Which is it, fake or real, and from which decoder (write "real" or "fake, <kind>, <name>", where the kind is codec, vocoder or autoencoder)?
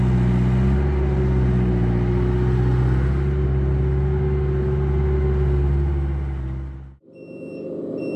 real